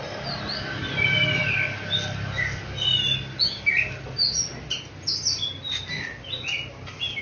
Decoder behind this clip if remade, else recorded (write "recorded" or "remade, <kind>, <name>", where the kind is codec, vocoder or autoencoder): recorded